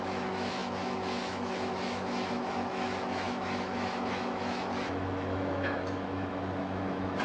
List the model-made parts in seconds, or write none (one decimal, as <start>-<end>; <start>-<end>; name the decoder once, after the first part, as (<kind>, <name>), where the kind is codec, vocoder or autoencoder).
0.0-7.2 (autoencoder, DAC-VAE)